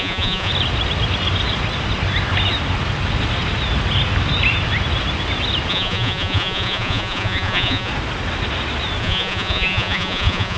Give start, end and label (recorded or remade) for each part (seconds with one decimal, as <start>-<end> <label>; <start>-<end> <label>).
0.0-0.5 remade; 0.5-5.7 recorded; 5.7-7.9 remade; 7.9-9.0 recorded; 9.0-10.6 remade